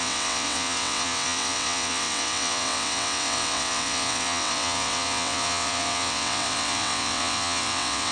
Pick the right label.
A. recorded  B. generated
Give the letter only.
B